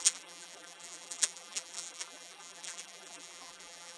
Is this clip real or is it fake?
fake